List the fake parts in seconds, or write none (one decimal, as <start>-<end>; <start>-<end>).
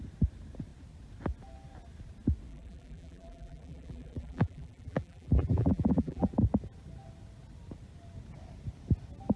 2.5-6.3